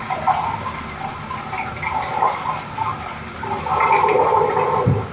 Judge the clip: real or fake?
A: real